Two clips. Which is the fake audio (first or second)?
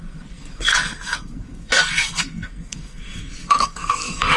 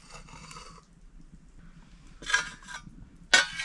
first